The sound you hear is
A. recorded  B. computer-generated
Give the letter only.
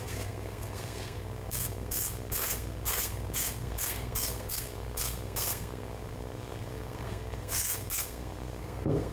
B